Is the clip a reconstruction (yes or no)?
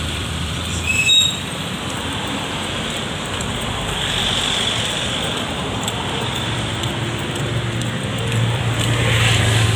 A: yes